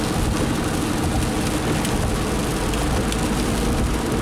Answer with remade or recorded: recorded